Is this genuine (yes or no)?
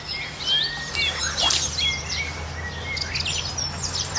yes